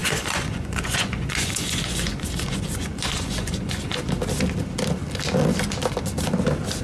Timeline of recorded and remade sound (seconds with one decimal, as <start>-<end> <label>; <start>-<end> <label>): 0.0-4.1 remade; 4.1-6.8 recorded